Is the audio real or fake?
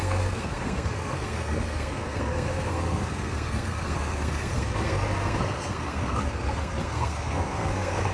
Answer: fake